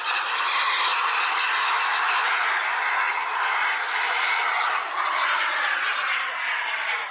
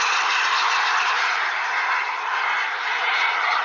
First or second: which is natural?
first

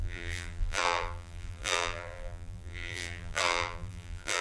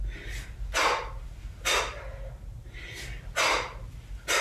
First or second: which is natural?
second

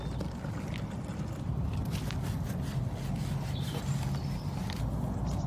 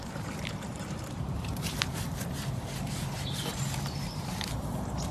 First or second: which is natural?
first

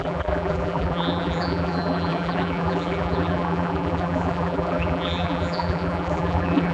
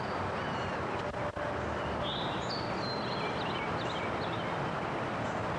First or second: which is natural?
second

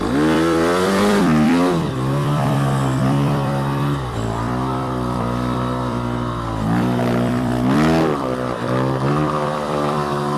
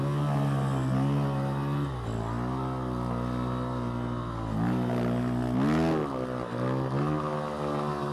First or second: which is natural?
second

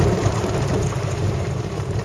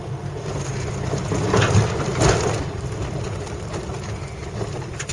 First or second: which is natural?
second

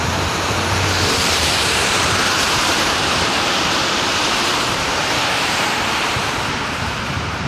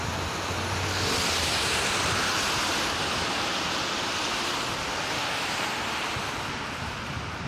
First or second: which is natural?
second